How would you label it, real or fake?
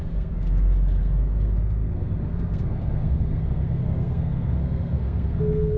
fake